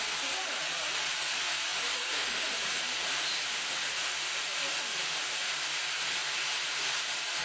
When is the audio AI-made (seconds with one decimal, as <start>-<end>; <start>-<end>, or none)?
none